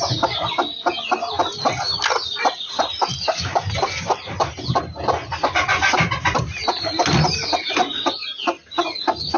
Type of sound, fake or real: real